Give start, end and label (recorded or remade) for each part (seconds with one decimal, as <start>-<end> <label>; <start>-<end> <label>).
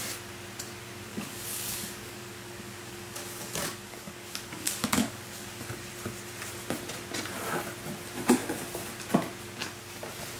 0.0-1.1 recorded; 1.1-5.9 remade; 5.9-10.4 recorded